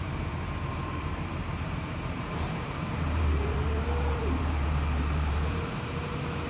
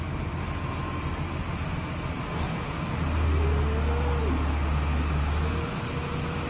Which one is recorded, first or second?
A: second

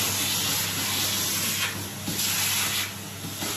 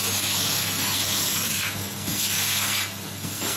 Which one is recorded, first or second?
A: first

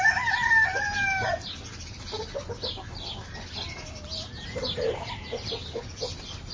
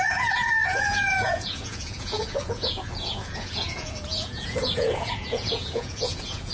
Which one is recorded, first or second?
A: first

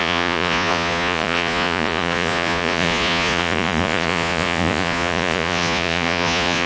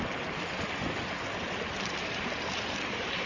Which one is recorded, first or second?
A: second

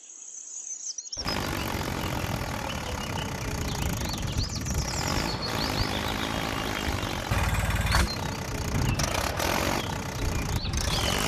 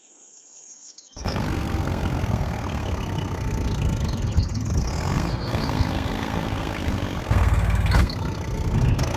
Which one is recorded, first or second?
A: first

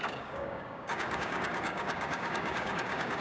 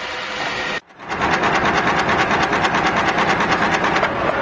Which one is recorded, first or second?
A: second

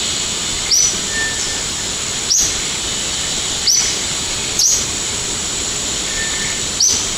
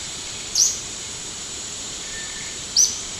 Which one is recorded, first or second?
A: first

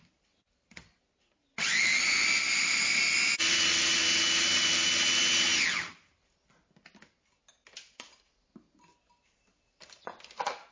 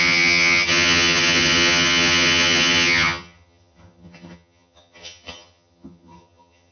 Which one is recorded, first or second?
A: first